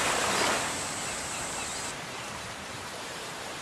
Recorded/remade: remade